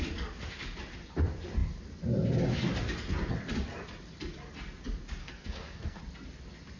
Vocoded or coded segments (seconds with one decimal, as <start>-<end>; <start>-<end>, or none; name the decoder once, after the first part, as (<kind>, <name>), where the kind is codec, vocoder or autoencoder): 5.2-6.0 (codec, SNAC)